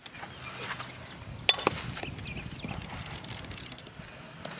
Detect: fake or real real